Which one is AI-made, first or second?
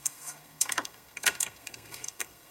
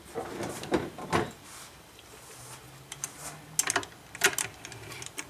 first